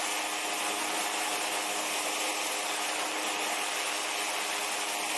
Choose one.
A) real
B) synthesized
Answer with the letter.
A